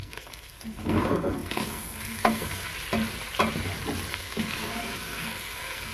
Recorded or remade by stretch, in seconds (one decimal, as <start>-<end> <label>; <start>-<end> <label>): 0.0-2.7 remade; 2.7-4.1 recorded; 4.1-5.9 remade